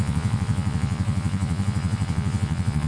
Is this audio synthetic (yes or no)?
yes